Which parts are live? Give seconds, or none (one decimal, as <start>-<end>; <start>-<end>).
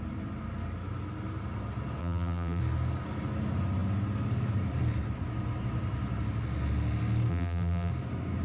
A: 0.0-2.0; 2.6-7.3; 7.9-8.4